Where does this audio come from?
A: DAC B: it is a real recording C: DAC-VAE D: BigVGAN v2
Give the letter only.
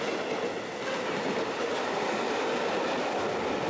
B